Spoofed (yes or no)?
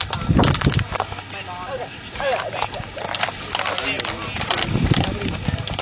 no